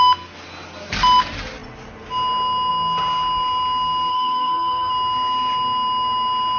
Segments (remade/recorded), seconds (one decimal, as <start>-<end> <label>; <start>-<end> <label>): 0.0-4.1 recorded; 4.1-4.9 remade; 4.9-6.6 recorded